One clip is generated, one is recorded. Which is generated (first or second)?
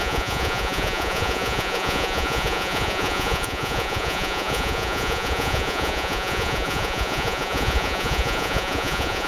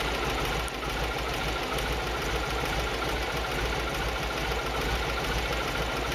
first